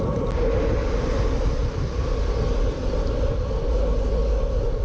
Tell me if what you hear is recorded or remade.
recorded